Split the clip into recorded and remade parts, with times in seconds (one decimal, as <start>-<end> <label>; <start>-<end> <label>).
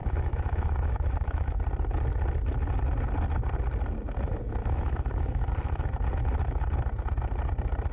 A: 0.0-1.6 remade; 1.6-4.6 recorded; 4.6-5.5 remade; 5.5-7.9 recorded